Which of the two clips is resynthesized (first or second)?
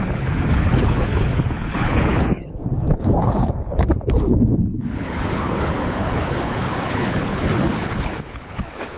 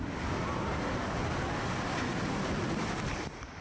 first